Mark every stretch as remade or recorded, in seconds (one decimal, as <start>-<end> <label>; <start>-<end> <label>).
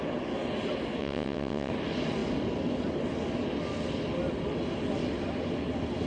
0.0-1.0 recorded; 1.0-1.7 remade; 1.7-6.1 recorded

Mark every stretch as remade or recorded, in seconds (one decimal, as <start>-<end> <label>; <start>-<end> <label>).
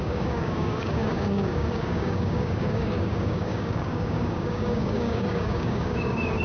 0.0-6.4 remade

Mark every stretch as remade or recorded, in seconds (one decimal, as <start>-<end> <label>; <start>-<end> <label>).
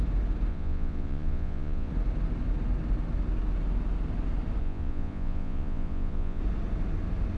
0.0-0.5 recorded; 0.5-1.9 remade; 1.9-4.6 recorded; 4.6-6.4 remade; 6.4-7.4 recorded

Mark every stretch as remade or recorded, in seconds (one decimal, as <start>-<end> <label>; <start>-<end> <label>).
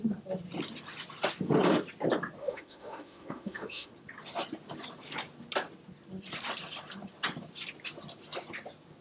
0.0-2.4 recorded; 2.4-3.9 remade; 3.9-9.0 recorded